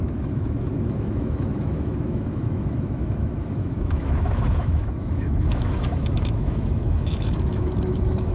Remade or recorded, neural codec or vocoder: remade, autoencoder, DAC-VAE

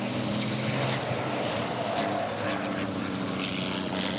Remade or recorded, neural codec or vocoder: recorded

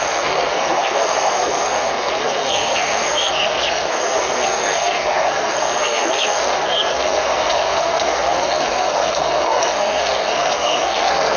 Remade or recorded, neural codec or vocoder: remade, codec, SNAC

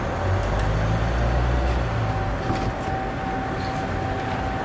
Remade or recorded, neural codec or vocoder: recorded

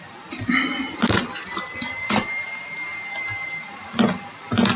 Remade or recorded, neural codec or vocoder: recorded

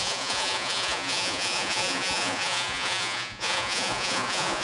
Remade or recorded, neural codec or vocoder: remade, vocoder, Vocos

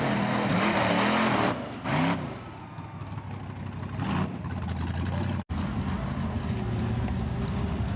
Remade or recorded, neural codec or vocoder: recorded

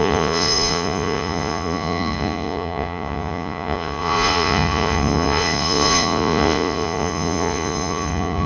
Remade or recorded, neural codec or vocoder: remade, vocoder, Vocos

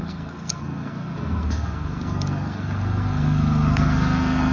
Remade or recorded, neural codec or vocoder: remade, codec, SNAC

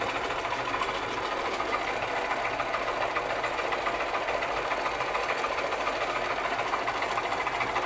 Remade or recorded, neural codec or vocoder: recorded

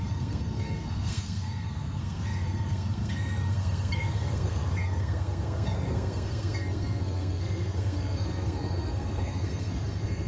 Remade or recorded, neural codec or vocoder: remade, codec, SNAC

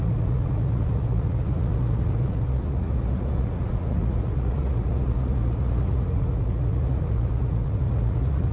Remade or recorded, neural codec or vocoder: remade, vocoder, Vocos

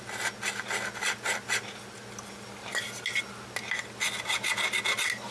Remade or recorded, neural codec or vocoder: recorded